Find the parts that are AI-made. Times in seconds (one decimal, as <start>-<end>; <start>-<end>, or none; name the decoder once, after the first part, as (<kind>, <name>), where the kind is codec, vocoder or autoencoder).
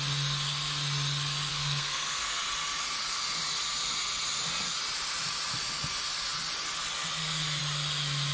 1.5-2.4 (codec, SNAC)